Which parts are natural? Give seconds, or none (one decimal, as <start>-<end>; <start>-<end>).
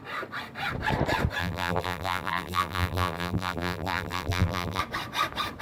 0.0-1.4; 4.8-5.6